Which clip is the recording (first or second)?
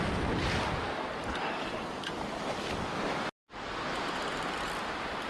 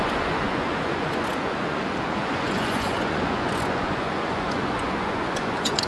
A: first